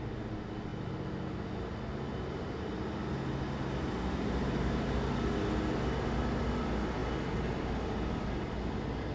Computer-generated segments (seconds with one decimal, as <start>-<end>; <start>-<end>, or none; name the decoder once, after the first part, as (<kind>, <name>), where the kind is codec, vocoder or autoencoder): none